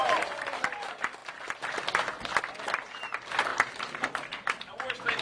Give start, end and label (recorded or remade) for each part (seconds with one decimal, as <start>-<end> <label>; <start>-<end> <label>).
0.0-5.2 recorded